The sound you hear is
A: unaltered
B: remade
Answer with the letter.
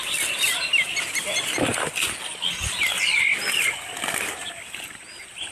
A